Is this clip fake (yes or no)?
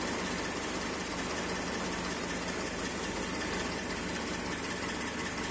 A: no